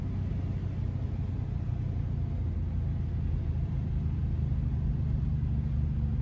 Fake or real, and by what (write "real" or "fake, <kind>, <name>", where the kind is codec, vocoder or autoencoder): real